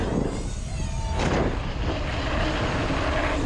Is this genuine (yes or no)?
yes